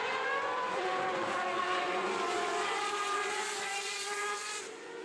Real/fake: fake